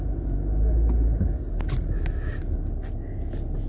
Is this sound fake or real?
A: real